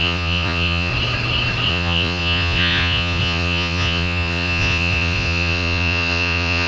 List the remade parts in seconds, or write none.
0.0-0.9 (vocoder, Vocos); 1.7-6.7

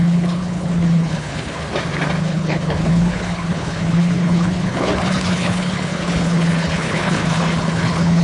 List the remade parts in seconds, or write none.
0.0-1.6 (codec, HILCodec); 2.2-8.2

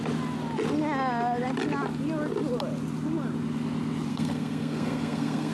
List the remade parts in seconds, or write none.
4.1-5.5 (codec, SNAC)

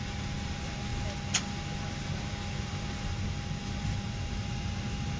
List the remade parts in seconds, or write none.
none